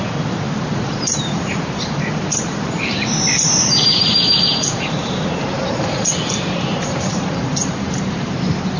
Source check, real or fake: fake